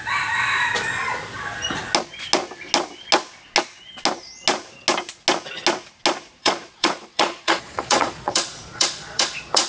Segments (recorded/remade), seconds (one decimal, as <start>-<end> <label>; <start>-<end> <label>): 0.0-6.4 recorded; 6.4-9.7 remade